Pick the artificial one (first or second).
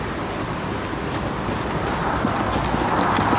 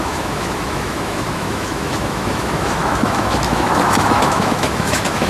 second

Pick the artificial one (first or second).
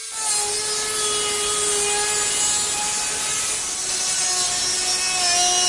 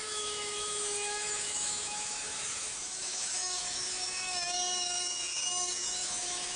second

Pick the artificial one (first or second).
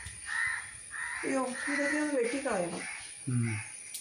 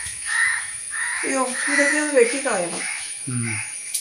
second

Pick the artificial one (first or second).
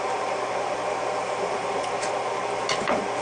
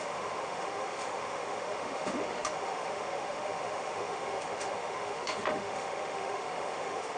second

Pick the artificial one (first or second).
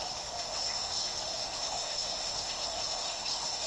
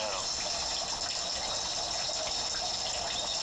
first